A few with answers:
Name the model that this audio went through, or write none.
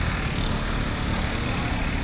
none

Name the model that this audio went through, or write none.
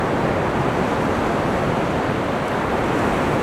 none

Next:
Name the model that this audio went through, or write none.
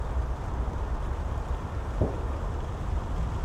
none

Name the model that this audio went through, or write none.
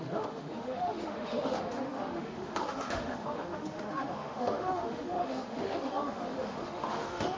autoencoder, DAC-VAE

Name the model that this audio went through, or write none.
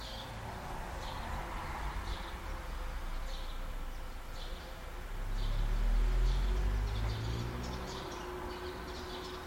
none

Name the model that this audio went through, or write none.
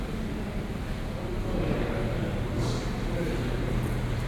none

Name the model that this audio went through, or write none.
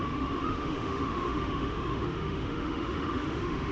autoencoder, DAC-VAE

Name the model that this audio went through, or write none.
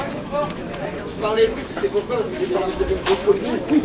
autoencoder, DAC-VAE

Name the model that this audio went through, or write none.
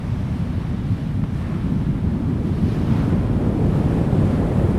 none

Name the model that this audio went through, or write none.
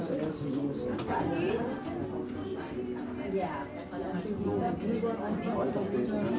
none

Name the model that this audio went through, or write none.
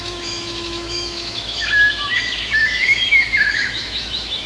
autoencoder, DAC-VAE